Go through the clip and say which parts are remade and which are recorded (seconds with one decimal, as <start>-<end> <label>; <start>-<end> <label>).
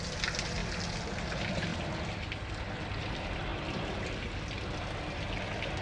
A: 0.0-5.8 recorded